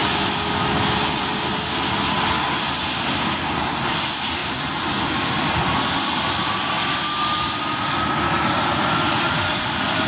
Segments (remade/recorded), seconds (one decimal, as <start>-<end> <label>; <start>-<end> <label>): 0.0-10.1 recorded